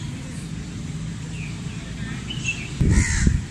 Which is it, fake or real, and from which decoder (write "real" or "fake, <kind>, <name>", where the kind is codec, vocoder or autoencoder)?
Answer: real